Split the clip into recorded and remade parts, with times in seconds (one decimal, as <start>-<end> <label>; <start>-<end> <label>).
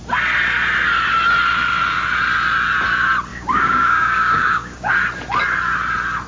0.0-3.3 recorded; 3.3-4.9 remade; 4.9-6.3 recorded